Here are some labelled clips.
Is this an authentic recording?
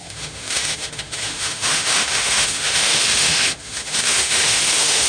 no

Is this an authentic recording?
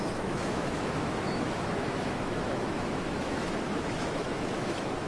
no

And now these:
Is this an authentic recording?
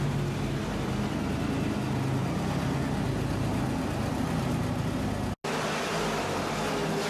yes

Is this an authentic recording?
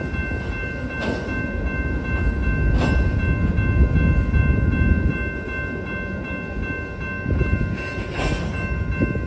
yes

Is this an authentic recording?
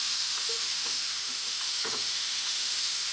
no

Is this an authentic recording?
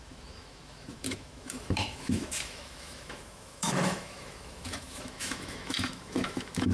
no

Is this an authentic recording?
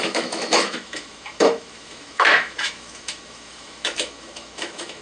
no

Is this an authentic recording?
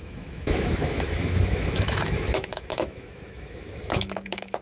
no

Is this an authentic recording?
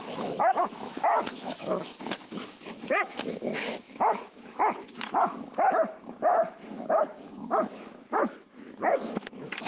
no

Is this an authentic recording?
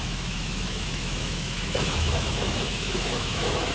no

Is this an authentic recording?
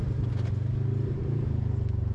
yes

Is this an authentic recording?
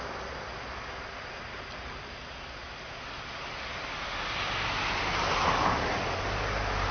yes